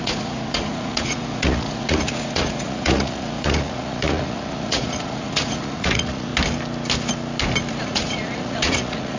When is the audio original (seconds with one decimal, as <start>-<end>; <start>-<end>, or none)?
6.3-7.7